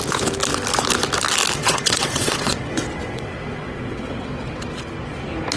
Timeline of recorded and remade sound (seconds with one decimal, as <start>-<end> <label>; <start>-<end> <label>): 0.0-1.6 recorded; 1.6-4.6 remade; 4.6-5.6 recorded